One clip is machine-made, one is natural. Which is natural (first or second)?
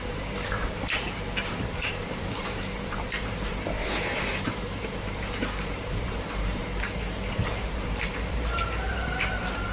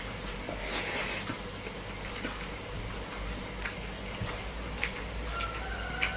second